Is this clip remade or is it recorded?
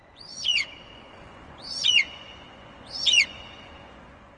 remade